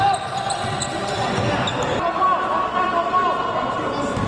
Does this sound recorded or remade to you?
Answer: recorded